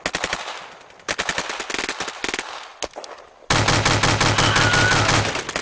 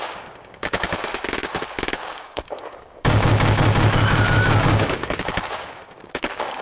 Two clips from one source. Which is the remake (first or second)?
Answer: second